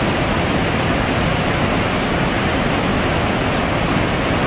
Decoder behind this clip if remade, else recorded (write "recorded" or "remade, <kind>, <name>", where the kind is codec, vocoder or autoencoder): recorded